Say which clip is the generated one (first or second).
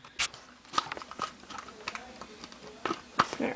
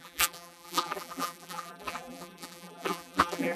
second